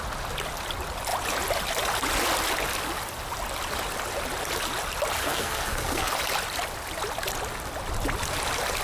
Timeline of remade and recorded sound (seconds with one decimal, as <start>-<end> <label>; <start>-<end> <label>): 0.0-5.2 recorded; 5.2-6.1 remade; 6.1-8.8 recorded

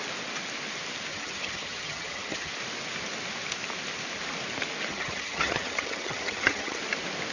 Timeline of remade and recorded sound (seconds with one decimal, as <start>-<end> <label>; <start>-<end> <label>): 0.0-1.1 recorded; 1.1-2.5 remade; 2.5-4.9 recorded; 4.9-6.8 remade; 6.8-7.3 recorded